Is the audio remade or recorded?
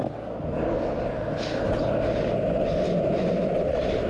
recorded